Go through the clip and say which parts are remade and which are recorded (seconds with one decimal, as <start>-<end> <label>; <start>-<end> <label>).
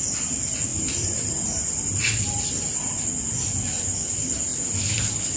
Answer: 0.0-0.7 recorded; 0.7-2.4 remade; 2.4-5.4 recorded